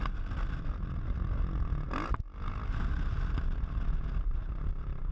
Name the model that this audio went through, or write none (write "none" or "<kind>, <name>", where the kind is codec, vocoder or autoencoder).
none